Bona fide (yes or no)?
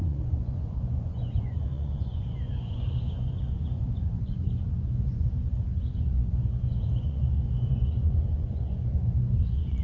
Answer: no